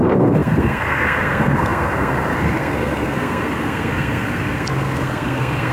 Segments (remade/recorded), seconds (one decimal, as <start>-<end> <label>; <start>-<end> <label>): 0.0-5.7 remade